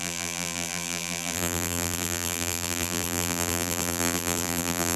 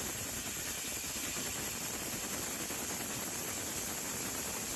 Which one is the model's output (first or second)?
first